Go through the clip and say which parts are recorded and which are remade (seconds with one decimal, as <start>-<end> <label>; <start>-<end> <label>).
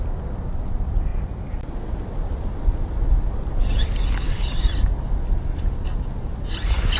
0.0-7.0 recorded